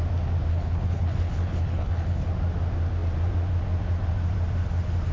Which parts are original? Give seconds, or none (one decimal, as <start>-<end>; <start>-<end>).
0.0-0.5; 2.3-5.1